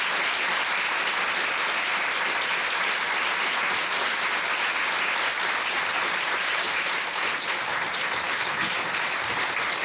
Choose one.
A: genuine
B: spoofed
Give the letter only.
A